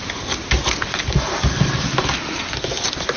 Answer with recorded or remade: recorded